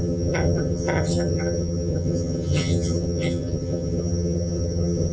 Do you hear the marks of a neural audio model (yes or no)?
yes